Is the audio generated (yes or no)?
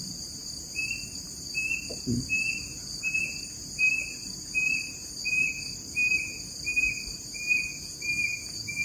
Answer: yes